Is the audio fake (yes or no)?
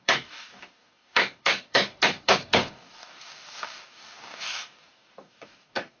yes